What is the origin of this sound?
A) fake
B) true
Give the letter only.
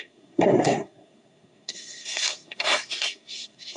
A